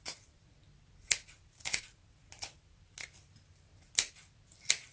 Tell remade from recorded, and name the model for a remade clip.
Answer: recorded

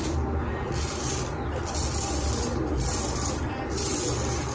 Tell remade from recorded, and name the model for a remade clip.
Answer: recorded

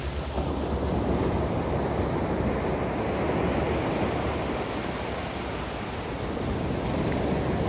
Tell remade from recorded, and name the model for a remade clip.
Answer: recorded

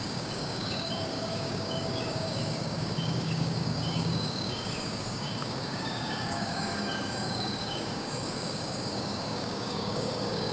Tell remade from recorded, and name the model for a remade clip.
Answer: remade, codec, DAC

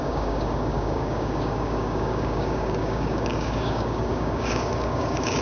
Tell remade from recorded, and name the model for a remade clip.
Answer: remade, codec, DAC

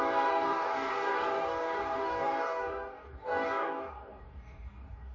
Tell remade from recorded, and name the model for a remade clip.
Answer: remade, codec, DAC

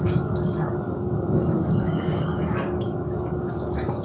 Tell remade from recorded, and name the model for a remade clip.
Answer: remade, codec, DAC